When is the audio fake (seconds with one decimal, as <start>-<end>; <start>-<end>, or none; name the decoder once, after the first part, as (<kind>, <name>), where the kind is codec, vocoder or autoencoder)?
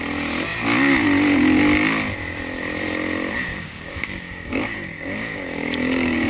3.5-6.3 (codec, DAC)